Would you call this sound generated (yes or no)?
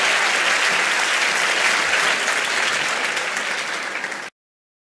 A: no